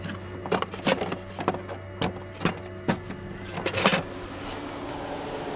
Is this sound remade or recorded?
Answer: recorded